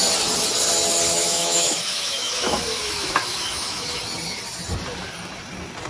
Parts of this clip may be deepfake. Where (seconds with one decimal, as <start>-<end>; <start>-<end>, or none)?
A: 1.1-4.0